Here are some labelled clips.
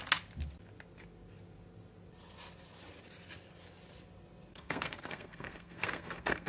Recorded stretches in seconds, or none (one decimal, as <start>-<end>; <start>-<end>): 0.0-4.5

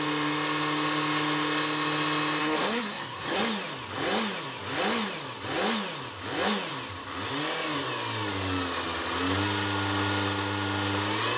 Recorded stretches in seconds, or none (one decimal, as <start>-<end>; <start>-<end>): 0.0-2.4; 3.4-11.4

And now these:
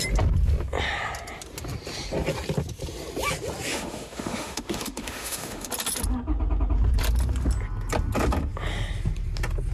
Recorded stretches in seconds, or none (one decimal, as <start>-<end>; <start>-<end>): 0.0-3.7; 5.7-9.7

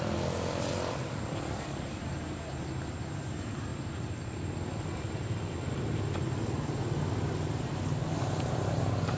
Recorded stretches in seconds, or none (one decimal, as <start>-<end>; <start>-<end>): 0.0-9.2

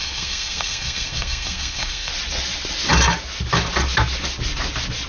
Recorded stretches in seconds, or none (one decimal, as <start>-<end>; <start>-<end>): 2.1-5.1

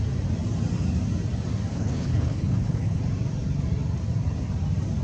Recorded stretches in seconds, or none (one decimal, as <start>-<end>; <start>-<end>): 0.0-1.7; 3.0-5.0

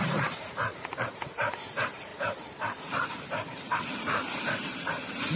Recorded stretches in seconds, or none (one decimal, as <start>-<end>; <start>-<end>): none

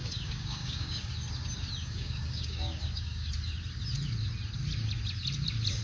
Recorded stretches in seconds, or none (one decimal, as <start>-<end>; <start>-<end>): 1.1-1.8; 3.3-5.8